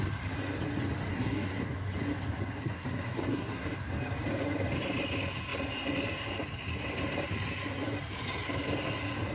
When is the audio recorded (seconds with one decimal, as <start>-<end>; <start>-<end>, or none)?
0.0-1.1; 1.6-2.6; 3.7-9.3